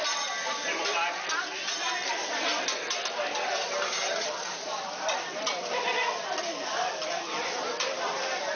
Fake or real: fake